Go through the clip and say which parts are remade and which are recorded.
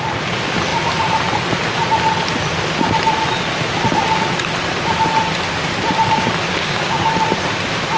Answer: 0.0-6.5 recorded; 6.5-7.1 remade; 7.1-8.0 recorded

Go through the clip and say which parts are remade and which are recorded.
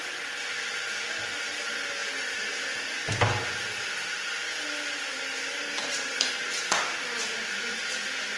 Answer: 0.0-8.4 recorded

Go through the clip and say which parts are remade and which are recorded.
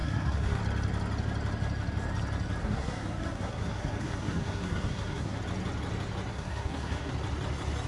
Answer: 0.0-0.6 remade; 0.6-2.6 recorded; 2.6-5.4 remade; 5.4-6.3 recorded; 6.3-7.1 remade; 7.1-7.9 recorded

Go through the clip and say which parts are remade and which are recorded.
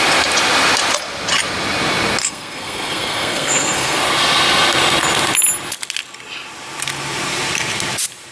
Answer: 0.0-2.2 recorded; 2.2-4.0 remade; 4.0-8.3 recorded